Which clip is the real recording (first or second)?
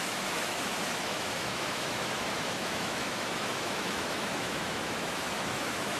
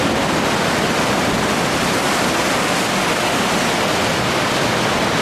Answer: second